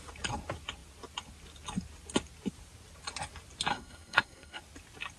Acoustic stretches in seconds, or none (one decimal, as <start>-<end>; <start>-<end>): 0.0-3.7; 4.6-5.2